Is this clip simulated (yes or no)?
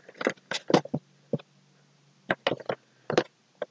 no